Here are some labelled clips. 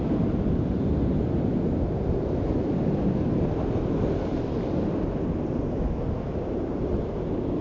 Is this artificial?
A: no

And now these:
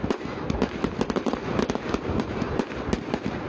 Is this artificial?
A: no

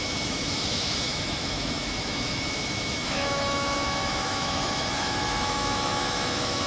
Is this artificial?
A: yes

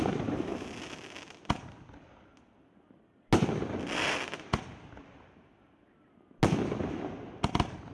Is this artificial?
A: no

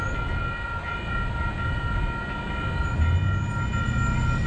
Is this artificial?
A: no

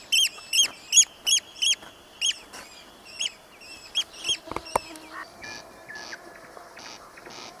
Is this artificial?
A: no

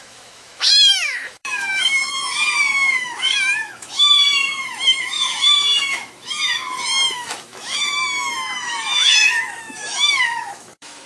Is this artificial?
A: yes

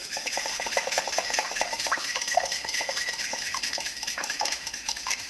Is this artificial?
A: yes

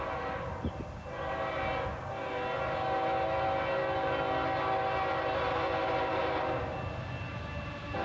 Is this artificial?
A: no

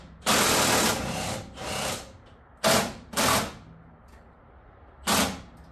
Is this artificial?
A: no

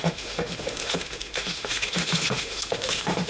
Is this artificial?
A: yes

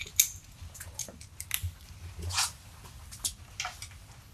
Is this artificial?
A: no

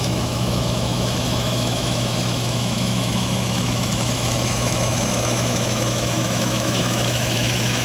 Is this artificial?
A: yes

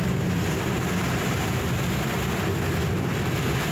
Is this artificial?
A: no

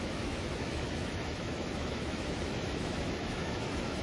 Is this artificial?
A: yes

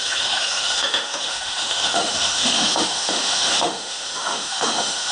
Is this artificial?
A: yes